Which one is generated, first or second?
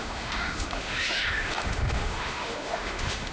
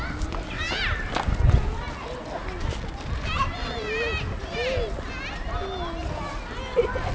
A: first